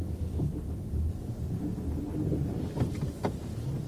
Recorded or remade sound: recorded